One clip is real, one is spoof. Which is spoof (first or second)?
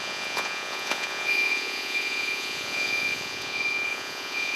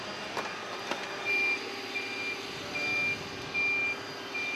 first